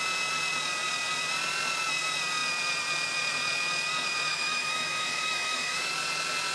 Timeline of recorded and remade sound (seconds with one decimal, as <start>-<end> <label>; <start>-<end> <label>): 0.0-4.3 recorded; 4.3-5.9 remade; 5.9-6.5 recorded